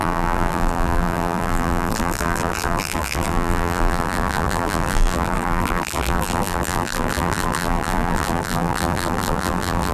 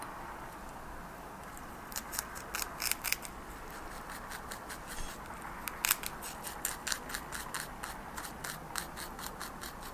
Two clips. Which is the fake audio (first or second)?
first